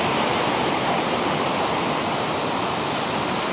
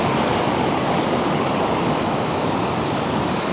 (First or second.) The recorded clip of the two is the first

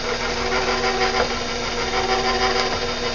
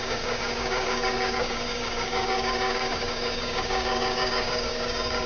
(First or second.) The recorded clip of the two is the first